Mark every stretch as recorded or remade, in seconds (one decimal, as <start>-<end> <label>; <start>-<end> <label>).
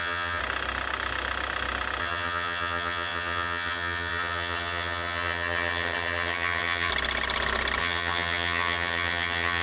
0.0-0.4 remade; 0.4-2.0 recorded; 2.0-6.9 remade; 6.9-7.8 recorded; 7.8-9.6 remade